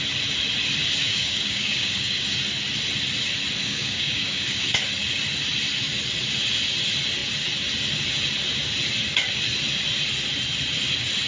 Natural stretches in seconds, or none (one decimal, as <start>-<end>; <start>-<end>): 0.0-1.0; 2.3-3.6; 4.6-11.3